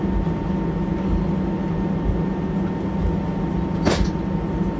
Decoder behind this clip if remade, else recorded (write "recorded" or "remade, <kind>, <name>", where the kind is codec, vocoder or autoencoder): recorded